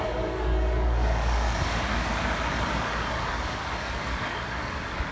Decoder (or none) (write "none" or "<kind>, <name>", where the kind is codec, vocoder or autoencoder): codec, DAC